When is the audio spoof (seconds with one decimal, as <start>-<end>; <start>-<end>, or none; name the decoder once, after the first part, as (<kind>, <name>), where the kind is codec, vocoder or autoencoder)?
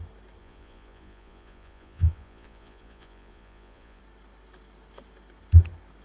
0.4-4.0 (vocoder, Vocos)